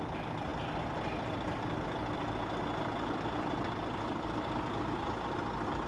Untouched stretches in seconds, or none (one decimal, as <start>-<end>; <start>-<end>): 0.0-5.9